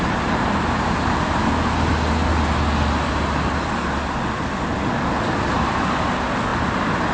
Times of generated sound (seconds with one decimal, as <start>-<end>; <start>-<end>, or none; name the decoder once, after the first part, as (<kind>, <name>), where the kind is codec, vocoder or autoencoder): none